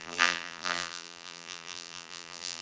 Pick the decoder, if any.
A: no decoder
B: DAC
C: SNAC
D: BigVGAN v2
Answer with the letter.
D